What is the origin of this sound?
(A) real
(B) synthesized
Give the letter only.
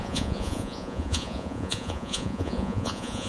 B